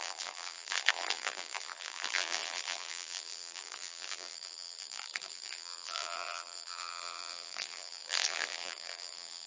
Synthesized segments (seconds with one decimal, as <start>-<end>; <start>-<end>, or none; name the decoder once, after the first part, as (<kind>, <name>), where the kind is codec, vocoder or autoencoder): 0.0-9.5 (vocoder, BigVGAN v2)